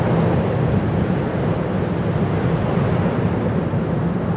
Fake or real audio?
real